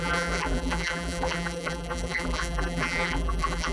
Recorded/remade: remade